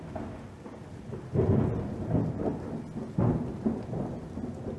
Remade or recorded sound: recorded